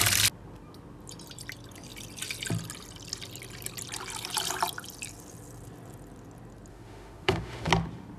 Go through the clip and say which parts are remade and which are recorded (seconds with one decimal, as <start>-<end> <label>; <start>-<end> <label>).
0.0-6.7 recorded; 6.7-7.7 remade; 7.7-8.2 recorded